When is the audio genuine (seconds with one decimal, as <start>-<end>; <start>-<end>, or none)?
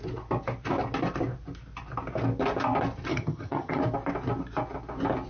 0.0-3.1; 3.8-5.3